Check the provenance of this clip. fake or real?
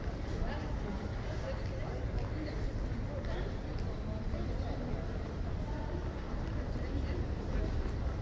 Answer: real